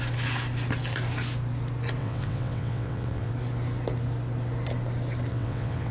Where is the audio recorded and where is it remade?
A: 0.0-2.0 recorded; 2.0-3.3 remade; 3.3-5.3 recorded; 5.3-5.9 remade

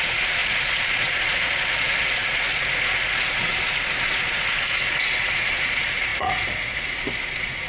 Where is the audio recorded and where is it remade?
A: 0.0-7.7 remade

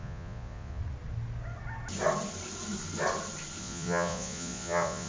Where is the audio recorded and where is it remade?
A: 0.0-0.8 remade; 0.8-3.6 recorded; 3.6-5.1 remade

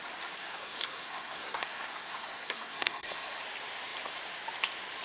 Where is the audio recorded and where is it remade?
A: 0.0-0.4 recorded; 0.4-3.4 remade; 3.4-5.0 recorded

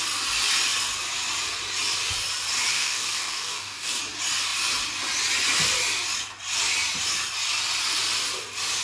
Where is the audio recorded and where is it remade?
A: 0.0-2.7 recorded; 2.7-4.0 remade; 4.0-8.8 recorded

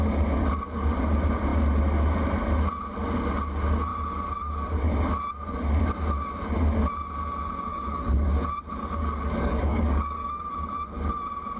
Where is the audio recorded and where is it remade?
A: 0.0-7.7 recorded; 7.7-8.3 remade; 8.3-8.8 recorded; 8.8-10.4 remade; 10.4-11.6 recorded

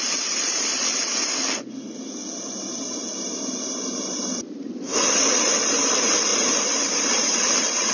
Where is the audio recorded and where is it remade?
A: 0.0-0.7 remade; 0.7-2.7 recorded; 2.7-7.9 remade

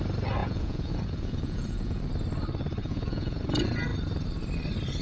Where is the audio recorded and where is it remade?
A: 0.0-0.4 recorded; 0.4-2.0 remade; 2.0-2.8 recorded; 2.8-3.4 remade; 3.4-5.0 recorded